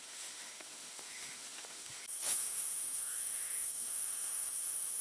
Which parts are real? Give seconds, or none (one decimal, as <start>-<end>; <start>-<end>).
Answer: none